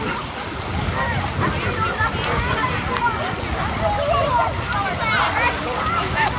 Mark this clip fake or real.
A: real